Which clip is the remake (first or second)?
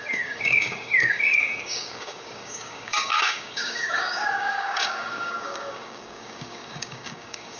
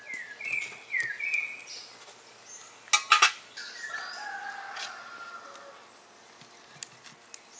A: first